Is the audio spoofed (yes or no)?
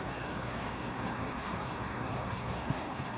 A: yes